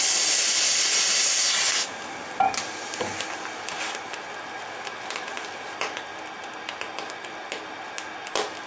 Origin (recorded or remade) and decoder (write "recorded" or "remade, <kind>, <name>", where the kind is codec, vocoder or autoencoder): recorded